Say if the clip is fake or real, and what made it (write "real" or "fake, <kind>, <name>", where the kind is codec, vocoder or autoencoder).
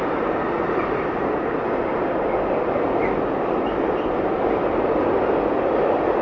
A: real